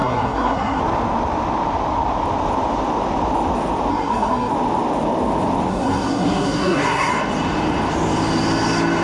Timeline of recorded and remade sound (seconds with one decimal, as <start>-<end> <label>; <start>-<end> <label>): 0.0-0.8 remade; 0.8-3.9 recorded; 3.9-4.5 remade; 4.5-5.7 recorded; 5.7-7.1 remade; 7.1-9.0 recorded